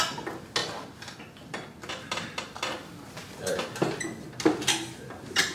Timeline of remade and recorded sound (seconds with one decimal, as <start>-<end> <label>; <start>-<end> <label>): 0.0-0.6 recorded; 0.6-2.1 remade; 2.1-2.8 recorded; 2.8-3.5 remade; 3.5-5.5 recorded